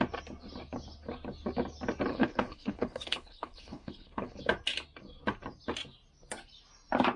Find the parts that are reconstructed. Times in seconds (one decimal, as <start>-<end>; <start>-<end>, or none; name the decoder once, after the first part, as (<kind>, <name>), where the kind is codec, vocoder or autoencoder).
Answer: 2.1-4.4 (codec, HILCodec)